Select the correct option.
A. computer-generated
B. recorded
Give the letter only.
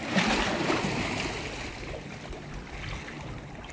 B